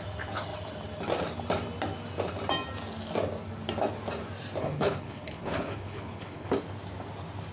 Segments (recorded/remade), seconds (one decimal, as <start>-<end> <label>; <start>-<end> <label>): 0.0-4.6 recorded; 4.6-6.5 remade; 6.5-7.5 recorded